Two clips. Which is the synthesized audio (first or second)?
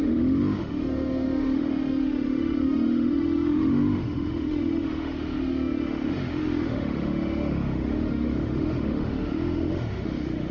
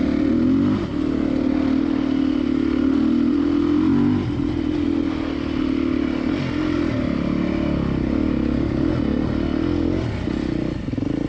first